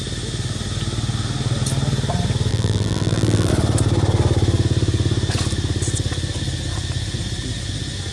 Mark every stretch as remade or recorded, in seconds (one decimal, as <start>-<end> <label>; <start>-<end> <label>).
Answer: 0.0-2.5 recorded; 2.5-3.5 remade; 3.5-8.1 recorded